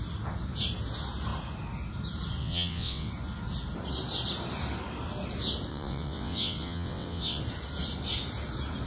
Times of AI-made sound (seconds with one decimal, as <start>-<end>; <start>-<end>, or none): 2.4-3.1; 5.7-7.4